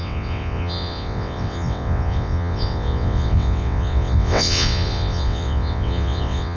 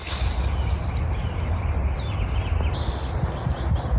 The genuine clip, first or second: second